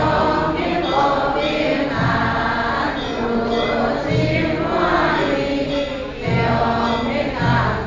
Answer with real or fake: real